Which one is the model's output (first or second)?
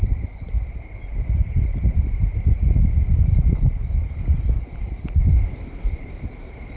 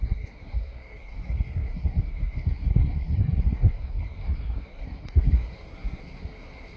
second